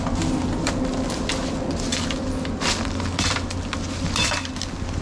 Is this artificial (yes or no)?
no